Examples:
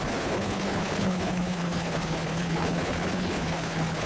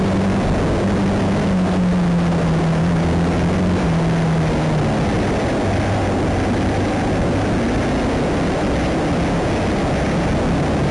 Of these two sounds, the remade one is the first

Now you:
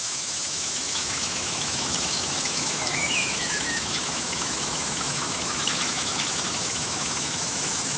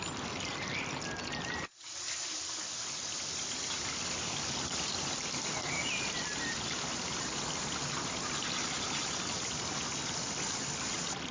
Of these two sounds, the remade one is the first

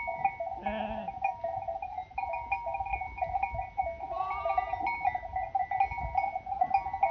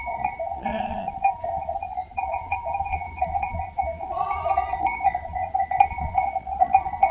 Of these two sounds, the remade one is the second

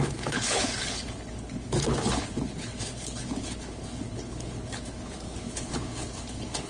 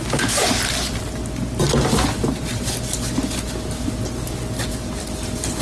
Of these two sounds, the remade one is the first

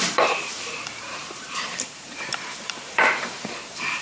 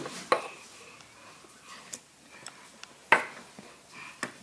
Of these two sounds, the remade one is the first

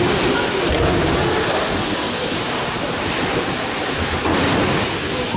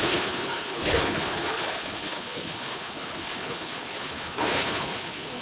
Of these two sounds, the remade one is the second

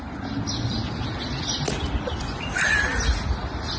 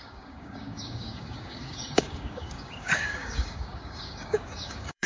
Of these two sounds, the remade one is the second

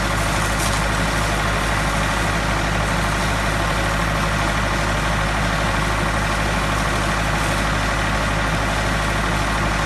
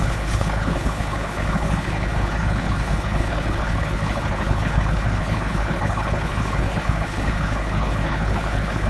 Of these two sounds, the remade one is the second